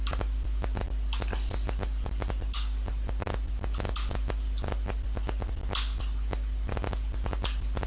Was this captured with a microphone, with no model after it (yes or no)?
yes